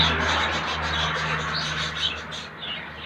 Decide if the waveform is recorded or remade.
recorded